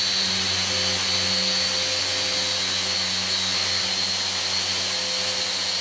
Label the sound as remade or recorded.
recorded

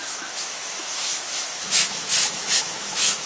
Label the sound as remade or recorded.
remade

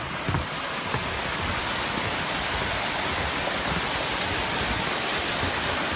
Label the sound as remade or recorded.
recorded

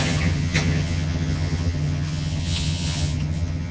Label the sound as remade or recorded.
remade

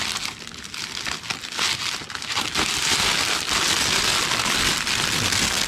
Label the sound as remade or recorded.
recorded